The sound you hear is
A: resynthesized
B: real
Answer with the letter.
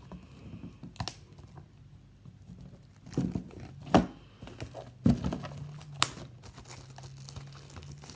B